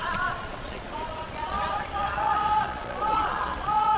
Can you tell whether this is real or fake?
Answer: fake